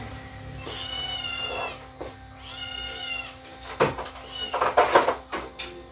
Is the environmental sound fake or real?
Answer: real